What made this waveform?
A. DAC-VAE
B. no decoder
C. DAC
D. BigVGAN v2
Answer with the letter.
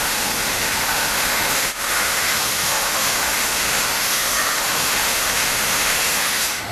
A